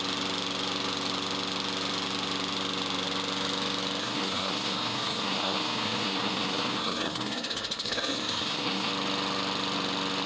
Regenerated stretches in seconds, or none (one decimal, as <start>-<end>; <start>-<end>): 4.0-8.9